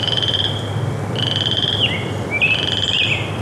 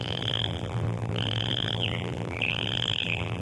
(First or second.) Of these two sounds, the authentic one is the first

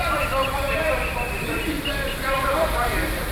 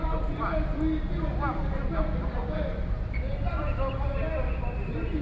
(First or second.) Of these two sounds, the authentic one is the second